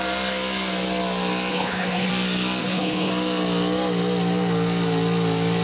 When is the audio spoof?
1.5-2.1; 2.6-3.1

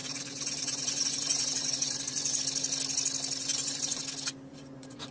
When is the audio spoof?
0.0-2.4; 3.4-4.0; 4.5-5.1

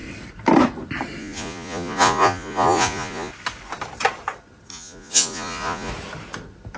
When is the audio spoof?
1.2-3.3; 4.7-5.9

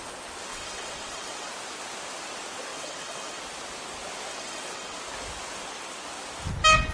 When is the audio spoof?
0.5-1.5; 2.7-3.4; 4.3-5.0

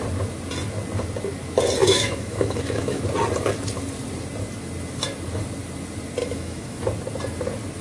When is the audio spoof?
1.8-3.0; 6.2-6.8

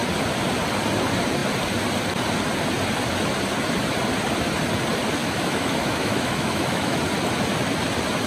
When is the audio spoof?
5.2-7.0

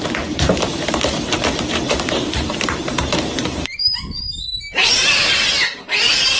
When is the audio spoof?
0.0-5.2; 5.7-6.4

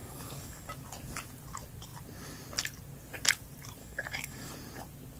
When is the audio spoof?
0.0-0.7; 3.8-4.5